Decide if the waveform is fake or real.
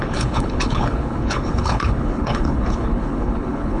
fake